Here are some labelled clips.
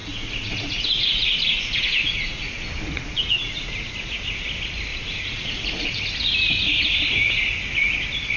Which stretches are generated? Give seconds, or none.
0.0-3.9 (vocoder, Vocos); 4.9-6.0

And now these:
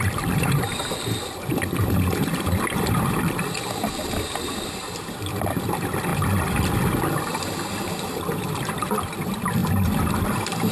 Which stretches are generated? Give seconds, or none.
0.0-6.1 (vocoder, BigVGAN v2); 7.0-9.6

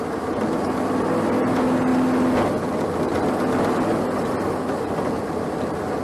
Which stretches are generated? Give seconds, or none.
none

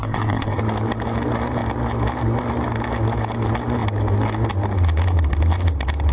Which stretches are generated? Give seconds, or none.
0.0-0.6 (codec, SNAC)